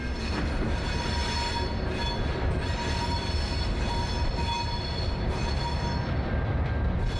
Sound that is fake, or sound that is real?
real